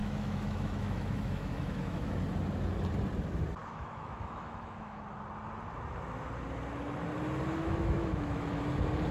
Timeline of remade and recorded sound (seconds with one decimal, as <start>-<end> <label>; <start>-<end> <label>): 0.0-2.1 remade; 2.1-3.6 recorded; 3.6-5.0 remade; 5.0-7.6 recorded; 7.6-8.6 remade; 8.6-9.1 recorded